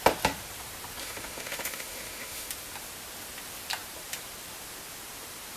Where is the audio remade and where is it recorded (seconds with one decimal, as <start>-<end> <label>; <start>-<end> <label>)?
0.0-1.0 recorded; 1.0-2.5 remade; 2.5-5.6 recorded

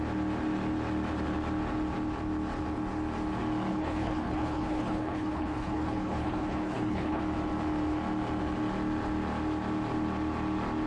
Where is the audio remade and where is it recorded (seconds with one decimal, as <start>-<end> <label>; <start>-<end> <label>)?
0.0-3.7 recorded; 3.7-7.2 remade; 7.2-10.9 recorded

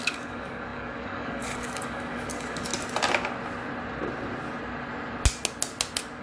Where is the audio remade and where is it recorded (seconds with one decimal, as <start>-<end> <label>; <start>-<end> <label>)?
0.0-2.7 remade; 2.7-6.2 recorded